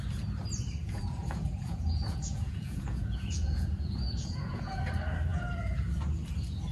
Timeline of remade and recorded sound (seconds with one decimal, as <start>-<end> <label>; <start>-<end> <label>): 0.0-0.8 recorded; 0.8-4.8 remade; 4.8-5.3 recorded; 5.3-5.8 remade; 5.8-6.7 recorded